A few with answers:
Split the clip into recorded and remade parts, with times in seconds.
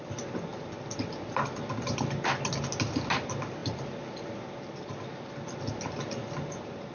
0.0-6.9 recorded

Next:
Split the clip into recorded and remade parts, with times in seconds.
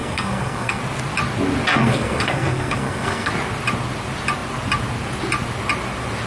0.0-0.8 remade; 0.8-1.7 recorded; 1.7-3.3 remade; 3.3-6.3 recorded